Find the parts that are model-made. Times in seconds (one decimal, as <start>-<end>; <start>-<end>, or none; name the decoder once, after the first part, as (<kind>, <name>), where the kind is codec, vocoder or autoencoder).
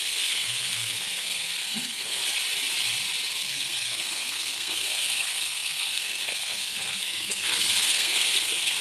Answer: 0.0-2.2 (codec, SNAC); 3.3-8.8